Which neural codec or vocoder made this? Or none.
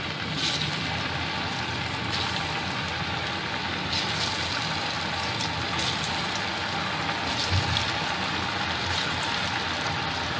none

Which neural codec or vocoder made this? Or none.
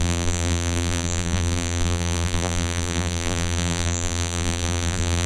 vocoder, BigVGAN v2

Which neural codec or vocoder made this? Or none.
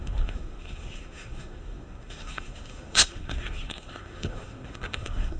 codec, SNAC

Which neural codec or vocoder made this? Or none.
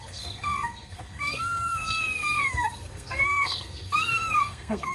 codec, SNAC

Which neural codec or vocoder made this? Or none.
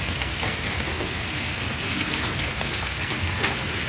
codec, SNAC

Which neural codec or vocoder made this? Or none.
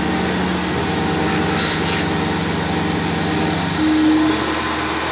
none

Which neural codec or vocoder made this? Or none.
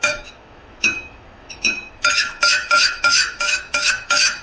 autoencoder, DAC-VAE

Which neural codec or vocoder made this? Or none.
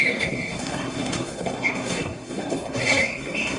codec, SNAC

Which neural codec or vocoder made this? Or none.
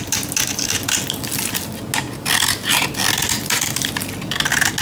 none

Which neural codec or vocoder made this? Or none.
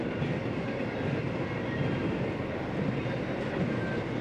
none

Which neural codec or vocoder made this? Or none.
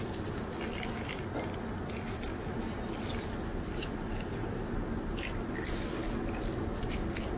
none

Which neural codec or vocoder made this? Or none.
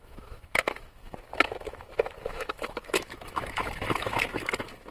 autoencoder, DAC-VAE